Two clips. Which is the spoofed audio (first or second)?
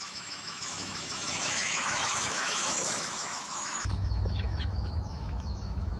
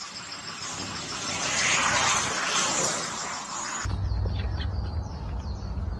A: first